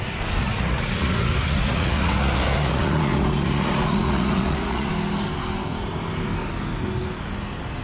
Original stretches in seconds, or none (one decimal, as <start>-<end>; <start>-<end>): 0.0-0.4; 4.9-7.8

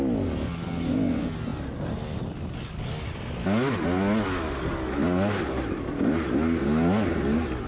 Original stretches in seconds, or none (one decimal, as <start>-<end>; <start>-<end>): 0.0-7.7

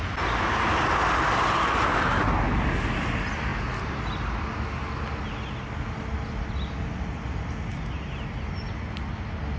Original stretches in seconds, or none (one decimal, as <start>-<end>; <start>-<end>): 0.0-9.6

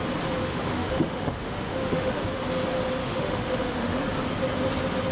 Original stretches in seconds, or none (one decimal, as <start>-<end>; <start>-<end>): 0.0-0.4; 2.2-3.0; 4.0-5.1

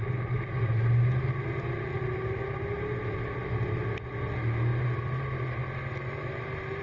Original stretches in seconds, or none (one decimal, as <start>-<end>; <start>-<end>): 0.0-4.7

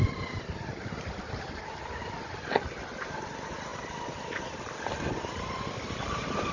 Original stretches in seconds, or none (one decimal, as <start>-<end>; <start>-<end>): 0.0-6.5